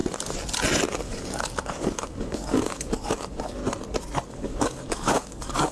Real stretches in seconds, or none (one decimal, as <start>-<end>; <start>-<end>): 0.0-0.9; 3.6-4.3